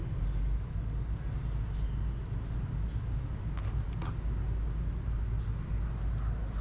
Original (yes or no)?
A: yes